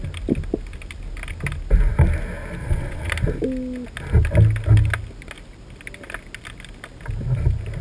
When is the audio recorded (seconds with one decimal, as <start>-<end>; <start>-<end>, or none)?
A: 0.0-2.6; 3.1-7.8